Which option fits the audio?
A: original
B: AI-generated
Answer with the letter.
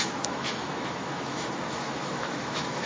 B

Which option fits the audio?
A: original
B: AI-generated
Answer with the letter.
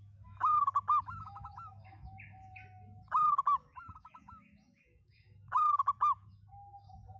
B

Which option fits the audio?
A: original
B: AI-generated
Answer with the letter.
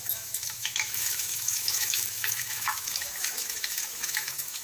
B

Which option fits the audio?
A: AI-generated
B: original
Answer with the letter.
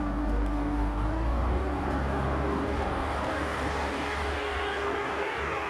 A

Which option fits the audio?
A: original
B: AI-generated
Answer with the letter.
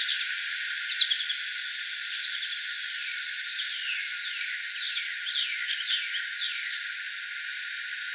A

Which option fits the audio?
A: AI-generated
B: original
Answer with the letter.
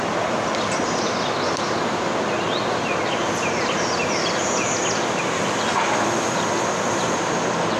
B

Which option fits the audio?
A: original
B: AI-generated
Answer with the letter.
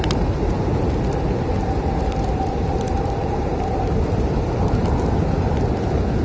A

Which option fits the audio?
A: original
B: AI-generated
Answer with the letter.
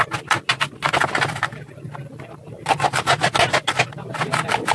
A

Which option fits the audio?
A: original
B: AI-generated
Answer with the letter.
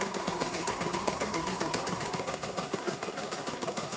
B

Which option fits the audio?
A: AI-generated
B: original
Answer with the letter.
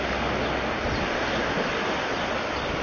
B